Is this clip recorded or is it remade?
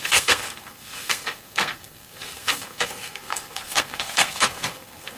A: remade